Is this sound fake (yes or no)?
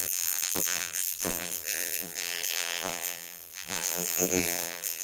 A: yes